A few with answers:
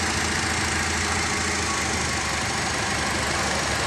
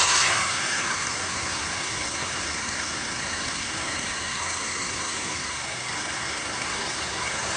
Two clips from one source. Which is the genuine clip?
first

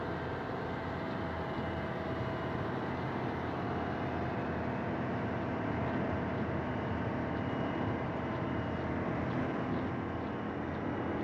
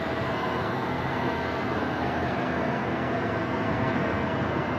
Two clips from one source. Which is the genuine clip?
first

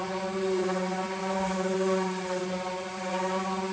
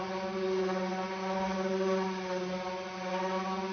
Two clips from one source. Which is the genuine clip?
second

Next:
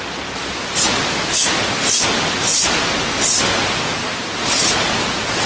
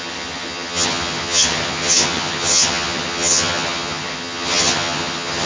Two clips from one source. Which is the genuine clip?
first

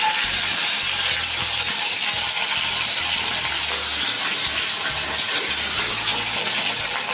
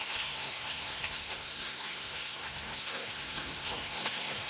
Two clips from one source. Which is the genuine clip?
first